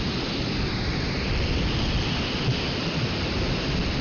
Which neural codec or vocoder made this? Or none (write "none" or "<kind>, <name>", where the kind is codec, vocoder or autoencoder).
none